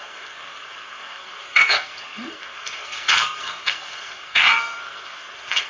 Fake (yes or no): yes